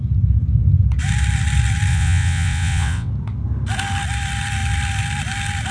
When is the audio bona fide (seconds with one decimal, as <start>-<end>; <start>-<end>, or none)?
0.0-1.9; 3.1-5.7